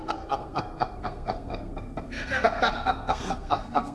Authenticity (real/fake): fake